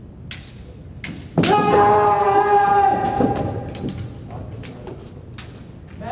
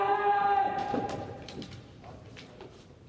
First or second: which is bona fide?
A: first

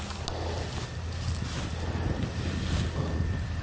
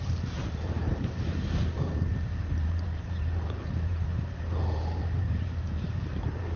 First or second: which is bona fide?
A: first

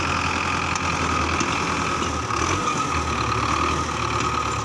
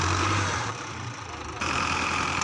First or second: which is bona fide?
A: first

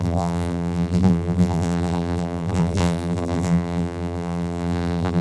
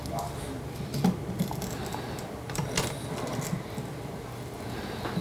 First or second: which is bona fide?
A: second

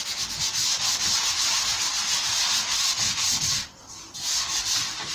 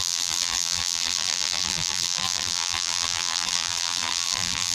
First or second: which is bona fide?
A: first